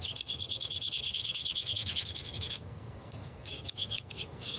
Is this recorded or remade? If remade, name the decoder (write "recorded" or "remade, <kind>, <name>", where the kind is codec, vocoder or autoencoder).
remade, codec, SNAC